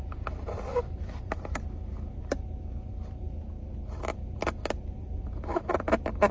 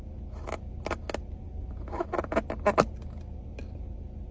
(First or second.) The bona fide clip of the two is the second